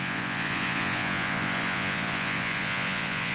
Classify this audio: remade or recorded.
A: remade